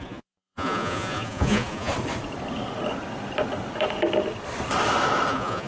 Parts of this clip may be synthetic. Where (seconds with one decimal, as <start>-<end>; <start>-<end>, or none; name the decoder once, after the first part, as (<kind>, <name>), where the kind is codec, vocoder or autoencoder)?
0.0-1.9 (vocoder, Vocos); 5.3-5.7

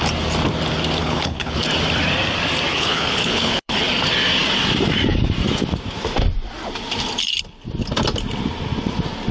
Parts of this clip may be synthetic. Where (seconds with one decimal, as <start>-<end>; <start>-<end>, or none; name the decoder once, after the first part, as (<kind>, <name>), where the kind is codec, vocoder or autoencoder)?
1.0-1.6 (codec, HILCodec); 2.7-3.8

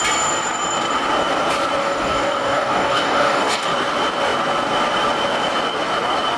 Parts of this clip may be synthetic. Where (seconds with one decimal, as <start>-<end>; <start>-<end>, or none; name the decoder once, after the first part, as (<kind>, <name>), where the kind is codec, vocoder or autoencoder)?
1.8-3.7 (codec, DAC)

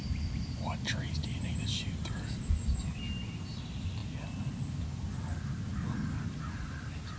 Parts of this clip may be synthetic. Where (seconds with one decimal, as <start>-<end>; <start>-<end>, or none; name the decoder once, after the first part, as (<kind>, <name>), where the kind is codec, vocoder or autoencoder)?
none